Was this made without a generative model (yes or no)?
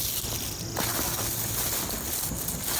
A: yes